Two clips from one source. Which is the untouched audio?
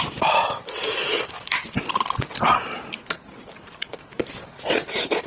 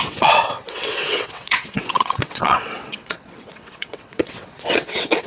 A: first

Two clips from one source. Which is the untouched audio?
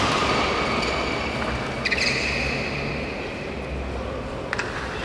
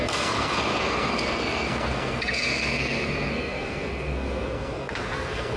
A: first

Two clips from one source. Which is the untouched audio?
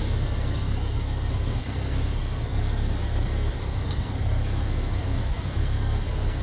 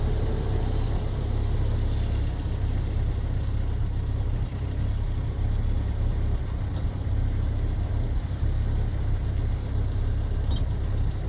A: second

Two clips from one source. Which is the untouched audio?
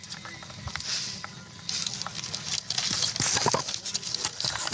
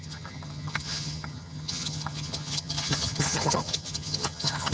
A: first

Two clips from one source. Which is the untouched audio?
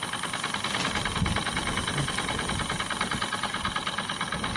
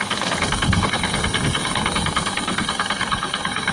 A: first